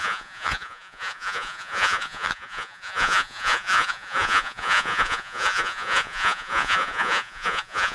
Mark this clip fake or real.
fake